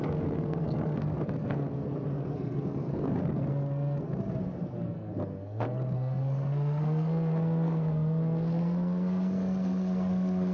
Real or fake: fake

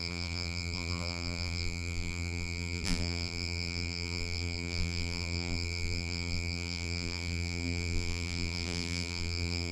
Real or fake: fake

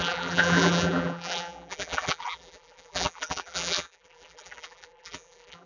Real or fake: fake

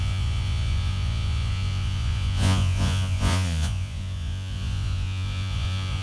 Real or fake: fake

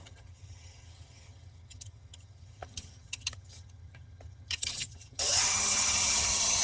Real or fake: fake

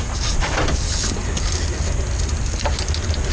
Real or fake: real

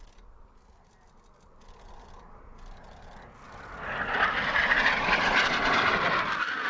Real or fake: real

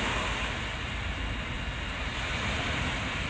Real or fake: real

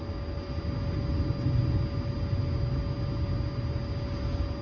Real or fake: real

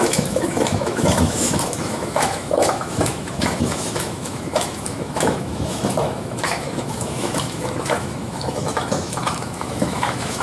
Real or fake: fake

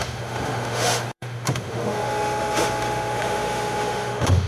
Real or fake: fake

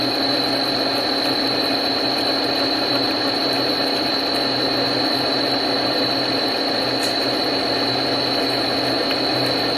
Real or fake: real